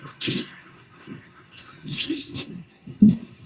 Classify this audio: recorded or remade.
remade